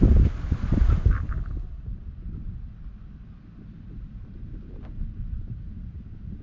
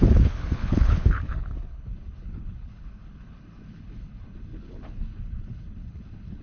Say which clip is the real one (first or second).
first